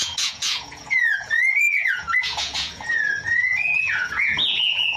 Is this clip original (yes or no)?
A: no